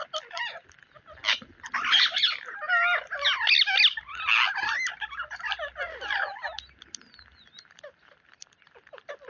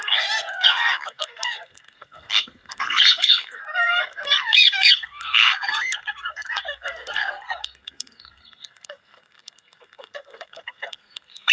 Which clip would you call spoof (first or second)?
second